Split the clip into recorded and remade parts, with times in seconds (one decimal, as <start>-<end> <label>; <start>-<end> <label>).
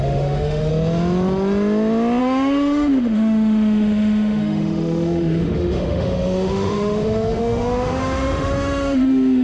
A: 0.0-0.7 remade; 0.7-2.2 recorded; 2.2-9.4 remade